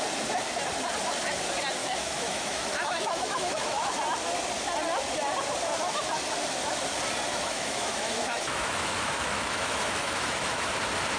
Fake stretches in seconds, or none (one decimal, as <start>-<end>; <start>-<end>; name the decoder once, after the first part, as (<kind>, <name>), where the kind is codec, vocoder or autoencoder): 1.8-3.9 (autoencoder, DAC-VAE); 7.3-10.7